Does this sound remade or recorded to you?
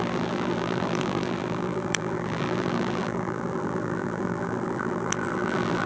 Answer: remade